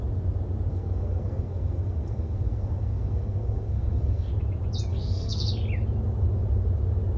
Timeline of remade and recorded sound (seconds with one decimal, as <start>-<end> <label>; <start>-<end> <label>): 0.0-0.7 recorded; 0.7-4.3 remade; 4.3-4.9 recorded; 4.9-5.5 remade; 5.5-7.2 recorded